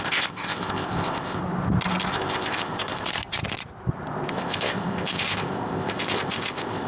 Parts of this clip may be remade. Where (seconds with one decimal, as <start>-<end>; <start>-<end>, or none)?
0.0-1.4; 2.1-3.1; 4.3-6.9